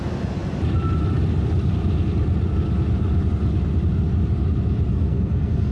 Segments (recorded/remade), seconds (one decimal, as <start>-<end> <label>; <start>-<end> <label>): 0.0-4.9 recorded; 4.9-5.7 remade